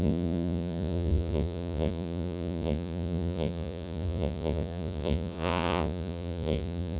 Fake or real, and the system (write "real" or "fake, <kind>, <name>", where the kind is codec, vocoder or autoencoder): fake, vocoder, Vocos